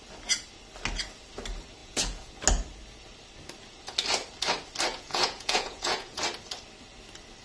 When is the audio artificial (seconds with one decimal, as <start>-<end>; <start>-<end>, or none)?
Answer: 1.8-2.3; 4.9-6.2